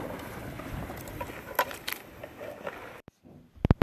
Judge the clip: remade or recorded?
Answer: recorded